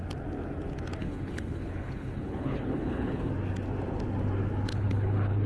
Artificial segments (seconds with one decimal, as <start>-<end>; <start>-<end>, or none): 1.0-3.3; 4.7-5.5